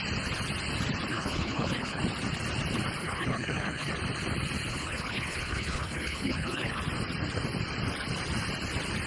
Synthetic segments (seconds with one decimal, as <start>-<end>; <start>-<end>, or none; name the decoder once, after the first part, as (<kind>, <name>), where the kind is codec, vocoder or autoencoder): 1.1-2.0 (codec, HILCodec); 3.0-3.9; 4.7-6.8